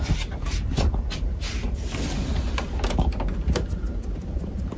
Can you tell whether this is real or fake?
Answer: real